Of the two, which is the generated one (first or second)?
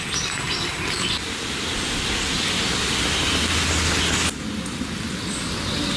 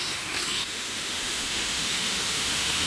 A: second